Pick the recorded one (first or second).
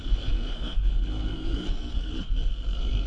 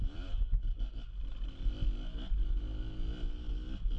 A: second